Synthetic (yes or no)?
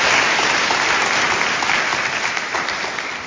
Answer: no